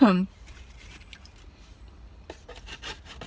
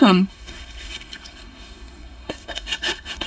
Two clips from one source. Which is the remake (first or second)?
second